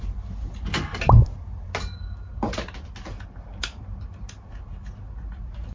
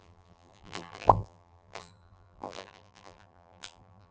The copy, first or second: second